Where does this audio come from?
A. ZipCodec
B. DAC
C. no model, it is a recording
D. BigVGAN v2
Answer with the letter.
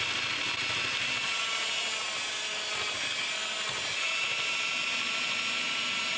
C